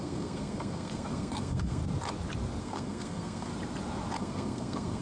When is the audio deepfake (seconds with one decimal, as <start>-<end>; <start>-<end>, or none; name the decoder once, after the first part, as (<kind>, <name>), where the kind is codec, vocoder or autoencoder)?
0.0-1.8 (codec, SNAC); 2.6-3.5; 4.2-5.0